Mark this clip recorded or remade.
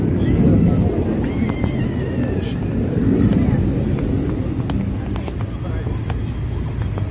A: recorded